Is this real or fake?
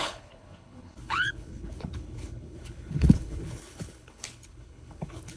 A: fake